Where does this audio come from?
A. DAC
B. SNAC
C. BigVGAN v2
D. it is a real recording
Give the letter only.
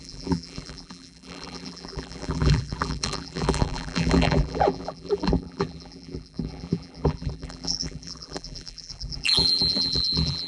C